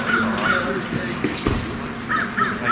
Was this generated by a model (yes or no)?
no